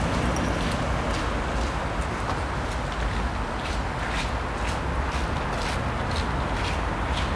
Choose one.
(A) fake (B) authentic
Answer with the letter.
B